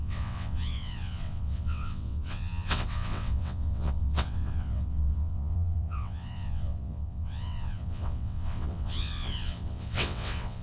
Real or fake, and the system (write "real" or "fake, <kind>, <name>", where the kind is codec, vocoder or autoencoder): fake, vocoder, WaveNeXt